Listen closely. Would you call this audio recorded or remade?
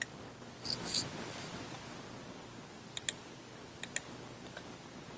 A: recorded